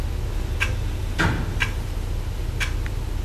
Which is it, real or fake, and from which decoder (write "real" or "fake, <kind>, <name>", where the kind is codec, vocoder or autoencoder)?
real